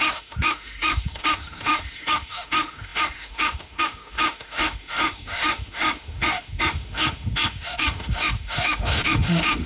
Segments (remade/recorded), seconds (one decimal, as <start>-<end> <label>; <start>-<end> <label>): 0.0-9.7 remade